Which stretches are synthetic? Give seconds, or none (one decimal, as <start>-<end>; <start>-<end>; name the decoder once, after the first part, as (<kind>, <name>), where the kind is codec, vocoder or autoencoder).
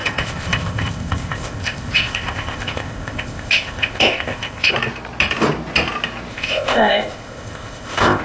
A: 0.0-4.7 (codec, ZipCodec); 6.3-8.2